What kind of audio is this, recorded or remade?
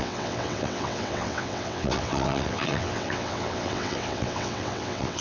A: remade